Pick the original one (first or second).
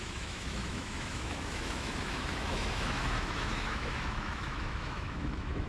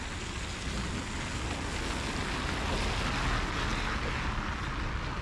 second